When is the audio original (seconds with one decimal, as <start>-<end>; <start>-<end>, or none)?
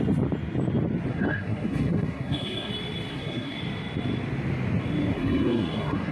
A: 0.0-1.1; 2.7-3.1; 3.6-5.1